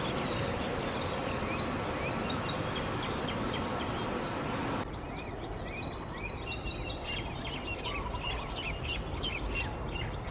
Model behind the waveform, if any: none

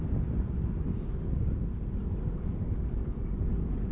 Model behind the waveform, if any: vocoder, BigVGAN v2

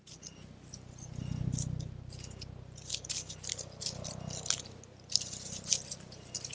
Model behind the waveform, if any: none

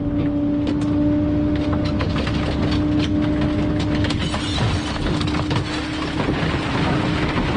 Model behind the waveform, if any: none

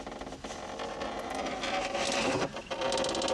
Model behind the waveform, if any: none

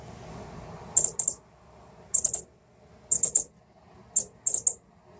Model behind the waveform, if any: none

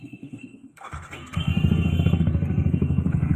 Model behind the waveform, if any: codec, SNAC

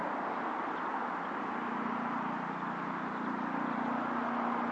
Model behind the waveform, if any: none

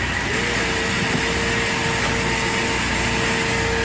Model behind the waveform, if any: none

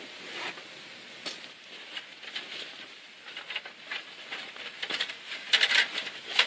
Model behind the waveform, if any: none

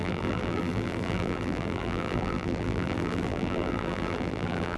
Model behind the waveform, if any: vocoder, BigVGAN v2